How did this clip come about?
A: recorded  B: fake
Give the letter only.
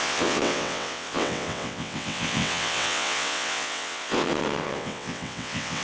B